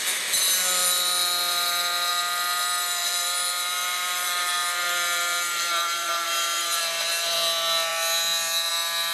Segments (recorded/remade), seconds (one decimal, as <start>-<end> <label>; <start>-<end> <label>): 0.0-3.0 recorded; 3.0-6.8 remade; 6.8-9.1 recorded